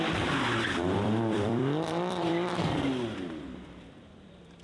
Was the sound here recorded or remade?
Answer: remade